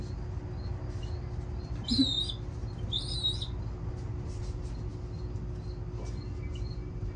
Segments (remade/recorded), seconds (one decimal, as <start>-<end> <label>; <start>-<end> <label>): 0.0-7.2 recorded